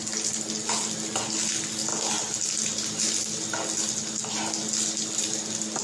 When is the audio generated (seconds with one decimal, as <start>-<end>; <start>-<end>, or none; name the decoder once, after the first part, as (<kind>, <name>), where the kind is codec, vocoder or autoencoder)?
none